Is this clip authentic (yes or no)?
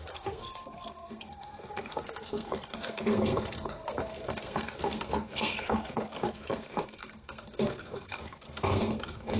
no